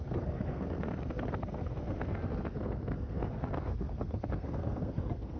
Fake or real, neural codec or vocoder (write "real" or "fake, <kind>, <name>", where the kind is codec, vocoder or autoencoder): fake, codec, SNAC